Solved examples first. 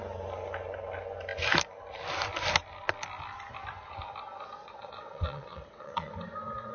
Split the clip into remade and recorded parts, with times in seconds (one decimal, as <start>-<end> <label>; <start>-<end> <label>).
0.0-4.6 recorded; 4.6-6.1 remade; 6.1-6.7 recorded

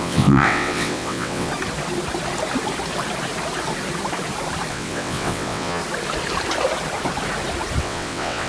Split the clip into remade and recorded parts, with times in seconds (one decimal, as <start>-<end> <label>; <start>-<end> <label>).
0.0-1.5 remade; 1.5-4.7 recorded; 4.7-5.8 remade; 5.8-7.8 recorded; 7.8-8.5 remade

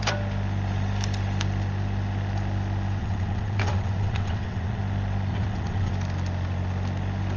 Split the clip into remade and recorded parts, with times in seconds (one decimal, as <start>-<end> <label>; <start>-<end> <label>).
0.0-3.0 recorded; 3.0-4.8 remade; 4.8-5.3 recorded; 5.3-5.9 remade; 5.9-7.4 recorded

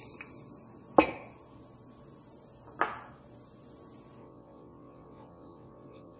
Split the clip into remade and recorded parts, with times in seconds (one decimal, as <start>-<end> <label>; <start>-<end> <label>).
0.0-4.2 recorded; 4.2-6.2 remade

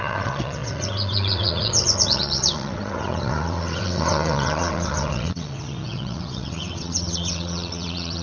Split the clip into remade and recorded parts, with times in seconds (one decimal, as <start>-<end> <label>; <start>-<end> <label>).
0.0-8.2 remade